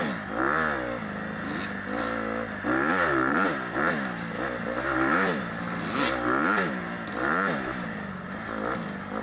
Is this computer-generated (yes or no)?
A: no